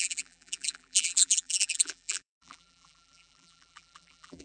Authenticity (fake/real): fake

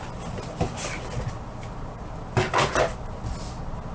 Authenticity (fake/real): real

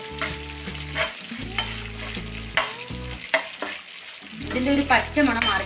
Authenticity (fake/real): real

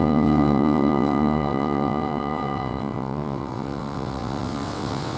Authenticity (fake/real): fake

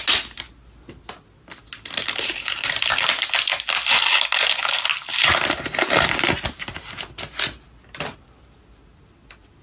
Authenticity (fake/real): real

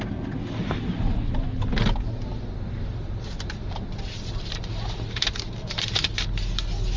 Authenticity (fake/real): real